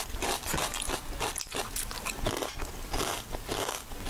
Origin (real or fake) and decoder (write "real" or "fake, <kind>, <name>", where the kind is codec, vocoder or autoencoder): real